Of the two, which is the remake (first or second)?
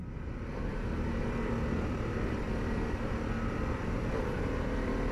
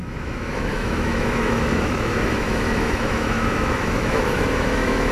second